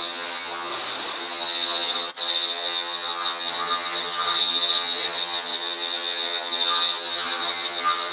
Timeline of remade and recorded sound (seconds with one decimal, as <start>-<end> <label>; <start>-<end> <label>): 0.0-0.7 remade; 0.7-1.2 recorded; 1.2-8.1 remade